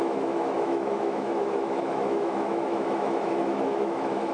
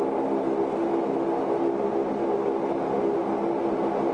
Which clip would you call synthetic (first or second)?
first